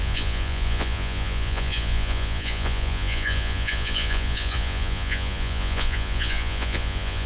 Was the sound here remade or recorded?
remade